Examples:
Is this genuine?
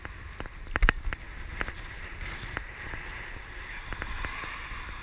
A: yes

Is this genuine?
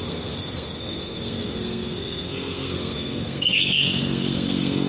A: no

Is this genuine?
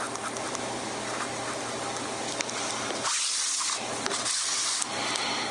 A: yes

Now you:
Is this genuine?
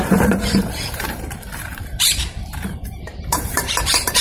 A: no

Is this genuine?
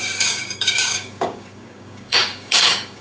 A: no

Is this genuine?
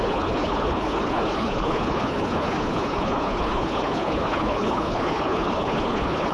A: no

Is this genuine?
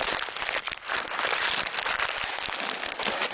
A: no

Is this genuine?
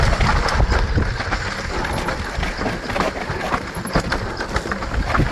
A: yes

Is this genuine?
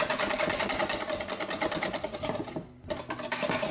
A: yes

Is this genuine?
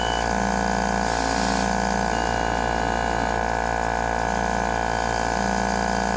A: yes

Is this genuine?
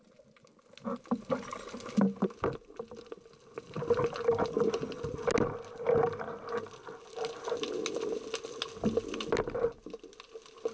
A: yes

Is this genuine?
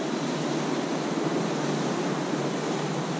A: yes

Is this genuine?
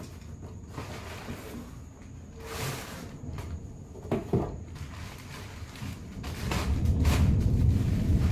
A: yes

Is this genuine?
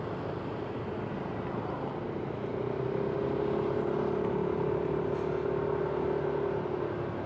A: yes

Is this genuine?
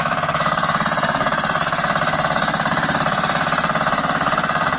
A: no